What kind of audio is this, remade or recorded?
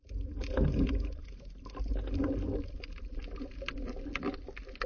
recorded